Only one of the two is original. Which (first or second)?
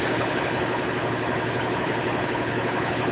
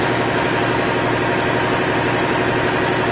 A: second